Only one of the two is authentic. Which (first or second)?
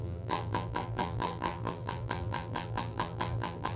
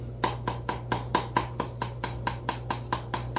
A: second